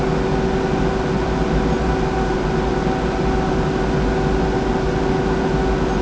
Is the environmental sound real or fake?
real